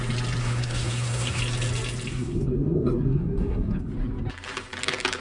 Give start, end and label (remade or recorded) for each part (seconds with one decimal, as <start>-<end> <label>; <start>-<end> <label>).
0.0-0.4 recorded; 0.4-1.4 remade; 1.4-2.1 recorded; 2.1-3.9 remade; 3.9-5.2 recorded

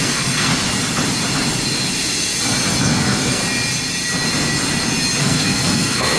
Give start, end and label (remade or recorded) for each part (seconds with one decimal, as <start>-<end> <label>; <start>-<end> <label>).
0.0-0.5 remade; 0.5-2.8 recorded; 2.8-3.4 remade; 3.4-5.2 recorded; 5.2-6.2 remade